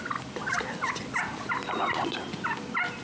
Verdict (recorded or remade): recorded